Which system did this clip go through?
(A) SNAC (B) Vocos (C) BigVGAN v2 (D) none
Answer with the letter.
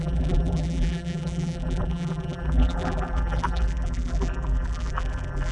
C